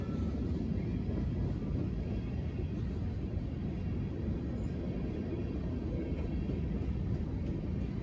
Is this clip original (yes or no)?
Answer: yes